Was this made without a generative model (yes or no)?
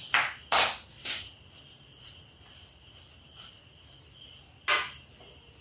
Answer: yes